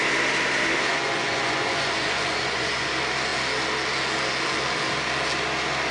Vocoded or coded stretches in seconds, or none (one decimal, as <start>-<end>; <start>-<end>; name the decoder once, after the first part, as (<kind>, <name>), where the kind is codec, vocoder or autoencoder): 0.9-2.9 (vocoder, Vocos)